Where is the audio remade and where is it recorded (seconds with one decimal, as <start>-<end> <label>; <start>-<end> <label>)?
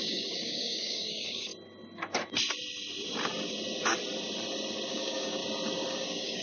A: 0.0-1.5 remade; 1.5-4.9 recorded; 4.9-5.4 remade; 5.4-5.9 recorded; 5.9-6.4 remade